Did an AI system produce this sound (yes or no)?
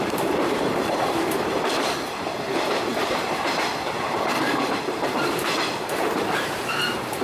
yes